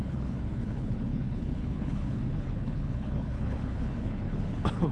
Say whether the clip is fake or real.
fake